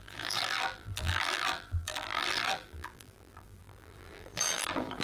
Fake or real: fake